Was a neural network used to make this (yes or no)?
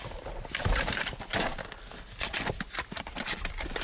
no